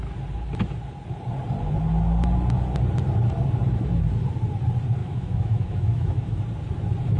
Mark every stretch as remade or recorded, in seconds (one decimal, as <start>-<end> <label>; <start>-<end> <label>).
0.0-5.0 recorded; 5.0-6.4 remade; 6.4-7.2 recorded